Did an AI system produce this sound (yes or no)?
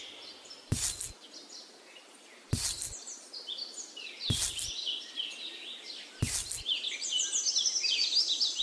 no